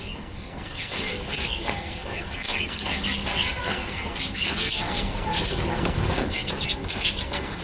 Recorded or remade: remade